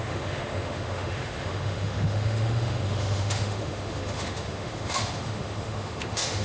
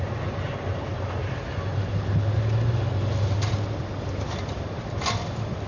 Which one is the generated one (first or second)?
first